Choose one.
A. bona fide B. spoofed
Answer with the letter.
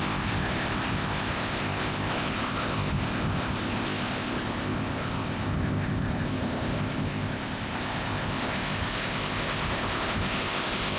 B